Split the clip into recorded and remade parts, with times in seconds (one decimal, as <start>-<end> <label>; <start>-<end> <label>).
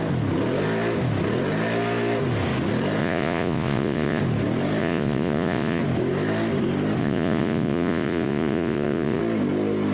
0.0-3.0 recorded; 3.0-4.2 remade; 4.2-4.8 recorded; 4.8-5.8 remade; 5.8-7.0 recorded; 7.0-9.2 remade; 9.2-9.9 recorded